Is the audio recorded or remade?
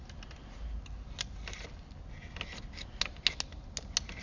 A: recorded